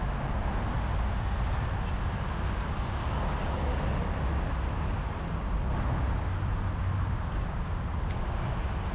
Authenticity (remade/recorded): recorded